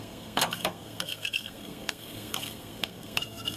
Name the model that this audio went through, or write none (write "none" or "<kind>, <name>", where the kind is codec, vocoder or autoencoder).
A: codec, SNAC